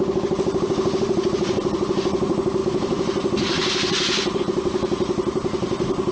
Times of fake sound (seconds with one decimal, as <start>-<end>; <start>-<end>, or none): 0.0-6.1